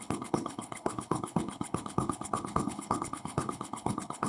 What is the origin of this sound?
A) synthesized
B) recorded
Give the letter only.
A